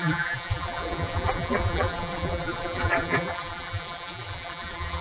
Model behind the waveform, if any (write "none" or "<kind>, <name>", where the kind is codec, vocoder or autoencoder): vocoder, BigVGAN v2